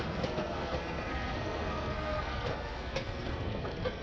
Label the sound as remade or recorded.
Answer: remade